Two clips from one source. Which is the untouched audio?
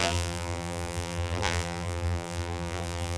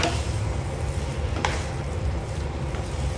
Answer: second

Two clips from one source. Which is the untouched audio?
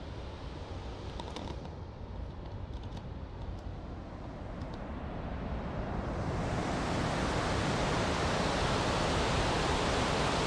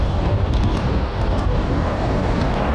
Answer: first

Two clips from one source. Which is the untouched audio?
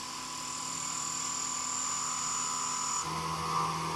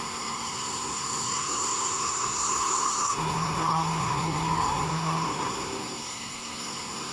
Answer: first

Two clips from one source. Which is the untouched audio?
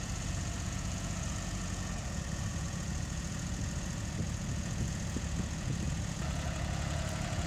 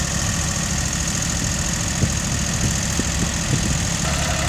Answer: second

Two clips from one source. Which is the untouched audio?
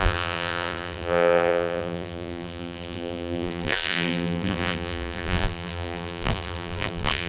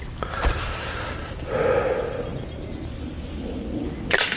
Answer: second